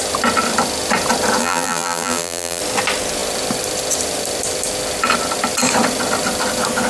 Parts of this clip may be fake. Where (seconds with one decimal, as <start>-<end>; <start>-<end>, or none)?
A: 1.4-2.6

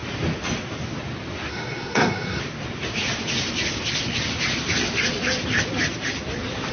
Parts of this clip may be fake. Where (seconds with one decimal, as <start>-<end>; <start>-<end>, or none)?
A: 1.5-2.4

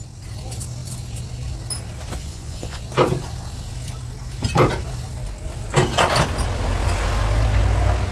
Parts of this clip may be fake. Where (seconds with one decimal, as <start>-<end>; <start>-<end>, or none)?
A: 2.2-2.8

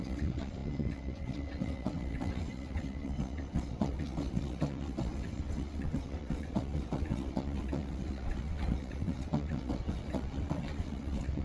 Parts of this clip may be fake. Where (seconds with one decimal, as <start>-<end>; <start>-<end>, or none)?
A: 0.0-11.4

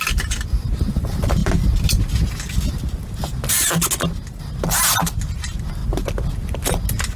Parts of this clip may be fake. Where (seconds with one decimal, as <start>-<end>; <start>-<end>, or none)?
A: none

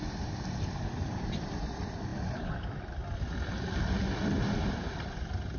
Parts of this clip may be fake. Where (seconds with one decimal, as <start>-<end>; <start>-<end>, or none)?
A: none